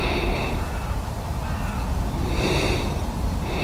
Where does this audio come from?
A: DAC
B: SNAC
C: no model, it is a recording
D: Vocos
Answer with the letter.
C